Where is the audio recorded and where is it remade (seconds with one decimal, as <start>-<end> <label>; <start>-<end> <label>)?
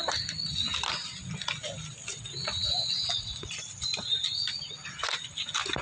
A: 0.0-2.0 recorded; 2.0-3.5 remade; 3.5-5.8 recorded